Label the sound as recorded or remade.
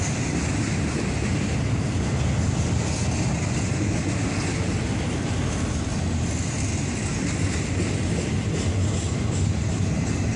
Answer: recorded